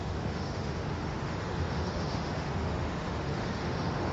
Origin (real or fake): fake